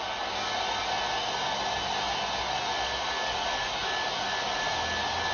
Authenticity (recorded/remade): recorded